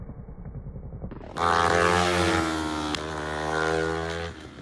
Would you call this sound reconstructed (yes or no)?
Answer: no